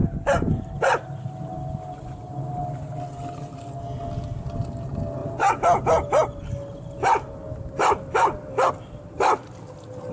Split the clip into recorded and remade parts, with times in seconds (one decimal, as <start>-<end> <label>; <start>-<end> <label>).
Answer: 0.0-10.1 recorded